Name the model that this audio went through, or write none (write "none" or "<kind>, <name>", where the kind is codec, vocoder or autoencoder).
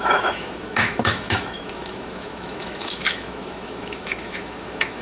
autoencoder, DAC-VAE